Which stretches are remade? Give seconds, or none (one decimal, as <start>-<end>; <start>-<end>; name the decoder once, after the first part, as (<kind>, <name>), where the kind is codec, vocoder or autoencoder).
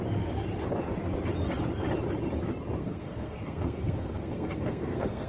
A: 2.8-5.3 (codec, SNAC)